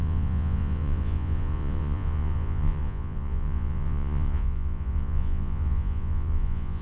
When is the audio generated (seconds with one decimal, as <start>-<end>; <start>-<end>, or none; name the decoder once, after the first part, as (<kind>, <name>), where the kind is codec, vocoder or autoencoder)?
0.0-6.8 (vocoder, Vocos)